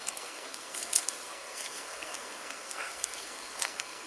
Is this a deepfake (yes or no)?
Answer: yes